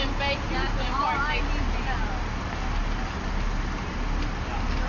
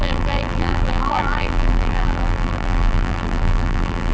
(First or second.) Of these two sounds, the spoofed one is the second